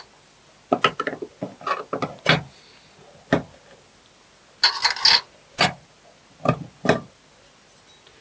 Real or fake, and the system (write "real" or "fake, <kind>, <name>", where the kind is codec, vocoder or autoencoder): real